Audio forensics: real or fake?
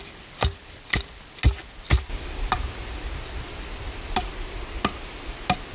real